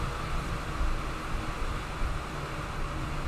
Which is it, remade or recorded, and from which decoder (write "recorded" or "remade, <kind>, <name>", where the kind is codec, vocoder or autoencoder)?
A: recorded